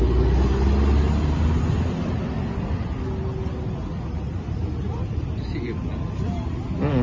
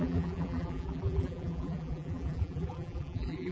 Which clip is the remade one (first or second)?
second